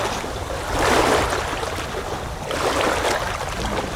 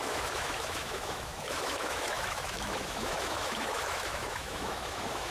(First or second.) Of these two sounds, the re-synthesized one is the second